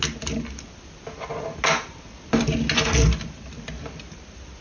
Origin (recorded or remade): recorded